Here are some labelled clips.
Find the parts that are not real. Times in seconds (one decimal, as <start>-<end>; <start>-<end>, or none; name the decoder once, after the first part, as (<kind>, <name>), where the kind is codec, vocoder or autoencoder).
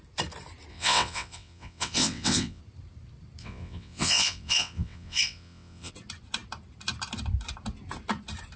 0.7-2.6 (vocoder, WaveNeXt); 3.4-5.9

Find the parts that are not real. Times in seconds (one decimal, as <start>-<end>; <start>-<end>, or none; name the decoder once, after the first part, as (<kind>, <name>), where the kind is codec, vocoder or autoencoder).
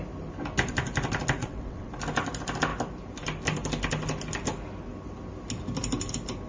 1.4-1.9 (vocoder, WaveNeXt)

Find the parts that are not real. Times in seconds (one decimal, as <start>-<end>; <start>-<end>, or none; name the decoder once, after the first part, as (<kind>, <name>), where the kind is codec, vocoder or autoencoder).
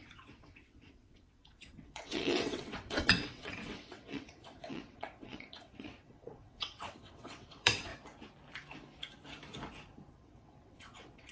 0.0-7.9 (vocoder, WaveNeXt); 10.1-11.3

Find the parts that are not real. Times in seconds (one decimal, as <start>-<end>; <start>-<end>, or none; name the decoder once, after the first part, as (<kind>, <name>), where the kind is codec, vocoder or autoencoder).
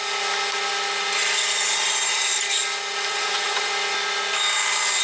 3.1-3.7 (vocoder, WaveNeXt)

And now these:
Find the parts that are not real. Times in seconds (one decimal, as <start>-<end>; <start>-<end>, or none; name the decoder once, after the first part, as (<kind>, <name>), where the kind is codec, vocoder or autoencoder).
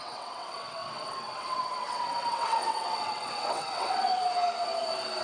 0.0-4.1 (vocoder, WaveNeXt)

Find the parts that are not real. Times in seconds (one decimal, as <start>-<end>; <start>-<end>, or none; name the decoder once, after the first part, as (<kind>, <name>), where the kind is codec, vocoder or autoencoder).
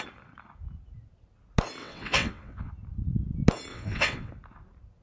1.8-2.7 (vocoder, WaveNeXt); 3.7-4.3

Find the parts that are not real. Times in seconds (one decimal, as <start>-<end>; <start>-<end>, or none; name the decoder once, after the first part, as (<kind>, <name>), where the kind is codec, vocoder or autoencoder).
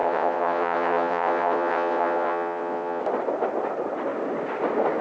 0.0-3.0 (vocoder, WaveNeXt)